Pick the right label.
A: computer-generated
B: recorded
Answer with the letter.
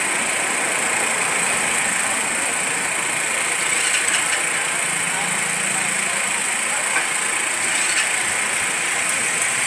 B